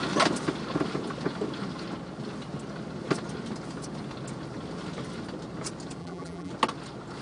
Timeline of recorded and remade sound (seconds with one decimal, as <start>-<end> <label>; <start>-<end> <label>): 0.0-6.0 recorded; 6.0-6.5 remade; 6.5-7.2 recorded